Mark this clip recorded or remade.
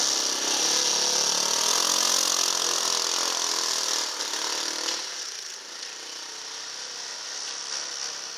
recorded